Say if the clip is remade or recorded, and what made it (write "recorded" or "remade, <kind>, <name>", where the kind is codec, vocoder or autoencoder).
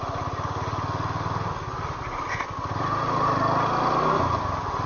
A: recorded